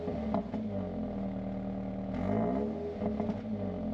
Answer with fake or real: real